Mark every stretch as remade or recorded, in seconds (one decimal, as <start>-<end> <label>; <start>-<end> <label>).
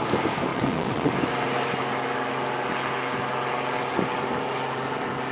0.0-0.5 recorded; 0.5-1.1 remade; 1.1-5.3 recorded